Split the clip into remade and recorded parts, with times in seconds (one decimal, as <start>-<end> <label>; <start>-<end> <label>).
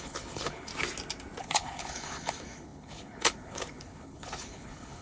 0.0-0.7 remade; 0.7-1.4 recorded; 1.4-5.0 remade